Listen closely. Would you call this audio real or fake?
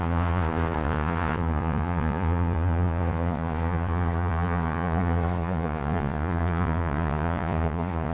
fake